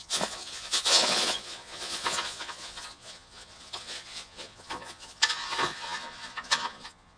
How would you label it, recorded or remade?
remade